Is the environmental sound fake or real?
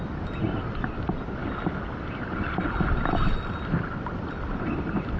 real